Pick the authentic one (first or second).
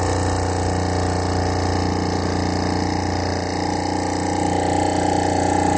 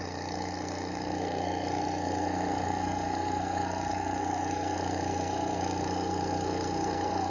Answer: first